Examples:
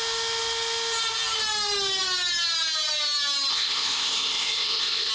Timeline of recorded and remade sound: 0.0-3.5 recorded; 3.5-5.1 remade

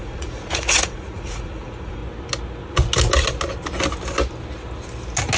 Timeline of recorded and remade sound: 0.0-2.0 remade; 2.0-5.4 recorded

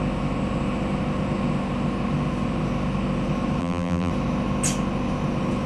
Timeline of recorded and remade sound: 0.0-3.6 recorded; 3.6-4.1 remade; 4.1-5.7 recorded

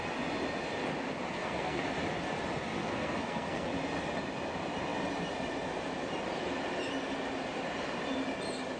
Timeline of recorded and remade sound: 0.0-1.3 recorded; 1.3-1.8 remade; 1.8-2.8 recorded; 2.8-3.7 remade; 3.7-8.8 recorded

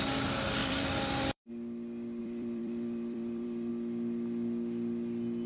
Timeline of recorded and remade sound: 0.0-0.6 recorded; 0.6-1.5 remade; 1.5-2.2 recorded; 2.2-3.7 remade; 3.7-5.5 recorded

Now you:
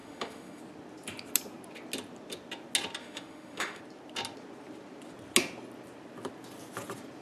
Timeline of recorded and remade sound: 0.0-0.6 remade; 0.6-3.0 recorded; 3.0-3.8 remade; 3.8-7.2 recorded

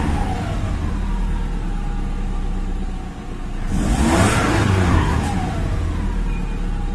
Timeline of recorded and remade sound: 0.0-4.5 recorded; 4.5-5.2 remade; 5.2-6.9 recorded